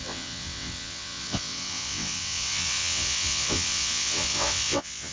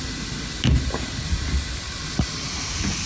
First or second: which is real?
second